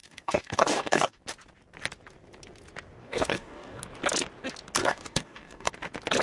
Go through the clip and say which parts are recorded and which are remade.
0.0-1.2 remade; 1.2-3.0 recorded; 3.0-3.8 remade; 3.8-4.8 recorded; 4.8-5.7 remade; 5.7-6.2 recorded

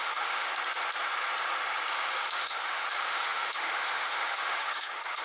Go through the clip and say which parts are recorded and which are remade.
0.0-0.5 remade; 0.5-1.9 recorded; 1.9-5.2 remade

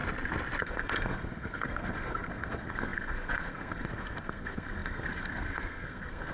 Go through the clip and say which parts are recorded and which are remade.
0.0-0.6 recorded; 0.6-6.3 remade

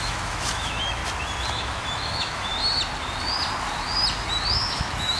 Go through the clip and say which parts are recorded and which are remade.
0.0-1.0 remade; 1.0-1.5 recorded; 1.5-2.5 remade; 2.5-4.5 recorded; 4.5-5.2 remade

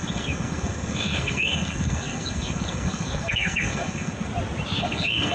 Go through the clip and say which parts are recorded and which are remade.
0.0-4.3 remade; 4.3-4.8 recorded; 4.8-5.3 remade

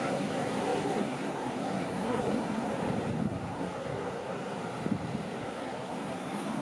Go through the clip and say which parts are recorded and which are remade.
0.0-2.7 remade; 2.7-3.2 recorded; 3.2-4.6 remade; 4.6-5.4 recorded; 5.4-6.6 remade

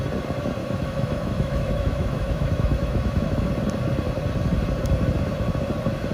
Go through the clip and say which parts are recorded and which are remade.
0.0-0.6 recorded; 0.6-3.5 remade; 3.5-6.1 recorded

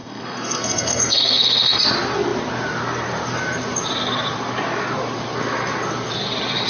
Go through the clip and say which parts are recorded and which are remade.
0.0-1.8 remade; 1.8-6.7 recorded